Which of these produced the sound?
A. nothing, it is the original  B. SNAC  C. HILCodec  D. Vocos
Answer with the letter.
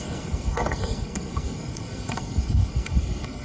B